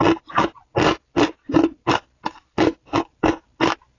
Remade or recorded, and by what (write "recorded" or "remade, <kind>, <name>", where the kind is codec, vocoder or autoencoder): recorded